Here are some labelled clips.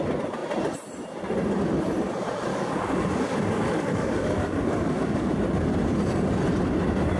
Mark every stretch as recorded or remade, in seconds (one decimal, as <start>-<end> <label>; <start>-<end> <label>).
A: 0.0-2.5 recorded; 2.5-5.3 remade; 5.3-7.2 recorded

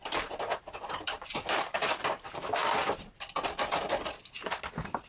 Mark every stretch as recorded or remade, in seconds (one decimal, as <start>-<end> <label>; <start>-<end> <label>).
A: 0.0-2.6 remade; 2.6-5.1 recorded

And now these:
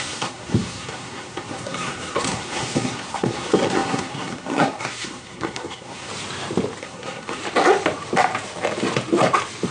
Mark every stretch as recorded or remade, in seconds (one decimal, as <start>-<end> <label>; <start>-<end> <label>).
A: 0.0-6.1 remade; 6.1-6.8 recorded; 6.8-7.4 remade; 7.4-9.7 recorded